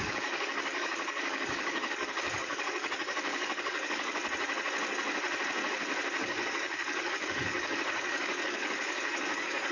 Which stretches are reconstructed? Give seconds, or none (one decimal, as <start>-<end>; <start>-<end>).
0.0-4.2; 6.2-9.7